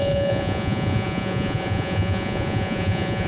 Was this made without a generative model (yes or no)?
no